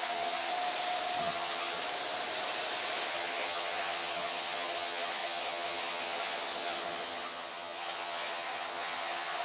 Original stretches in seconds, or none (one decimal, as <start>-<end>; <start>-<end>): 0.5-1.2; 1.8-3.1